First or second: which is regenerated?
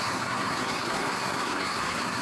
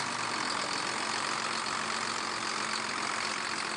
first